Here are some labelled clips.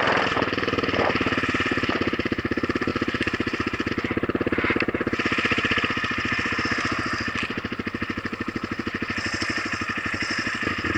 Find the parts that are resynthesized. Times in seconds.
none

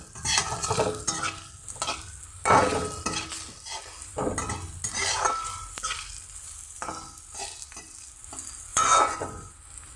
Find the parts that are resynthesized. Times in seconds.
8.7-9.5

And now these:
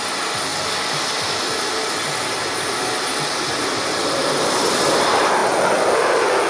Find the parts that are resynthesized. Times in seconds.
0.0-5.4

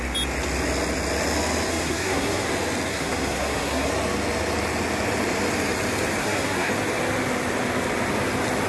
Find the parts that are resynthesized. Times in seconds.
1.7-2.5; 2.9-3.9; 6.2-6.7